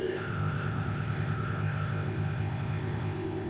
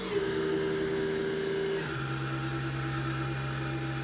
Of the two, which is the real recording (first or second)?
second